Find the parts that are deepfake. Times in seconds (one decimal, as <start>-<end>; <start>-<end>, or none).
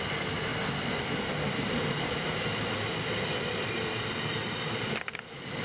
none